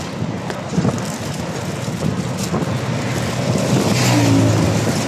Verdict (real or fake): real